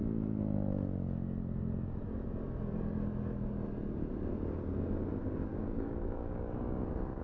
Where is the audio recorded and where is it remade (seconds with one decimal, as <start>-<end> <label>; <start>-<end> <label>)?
0.0-5.2 recorded; 5.2-7.2 remade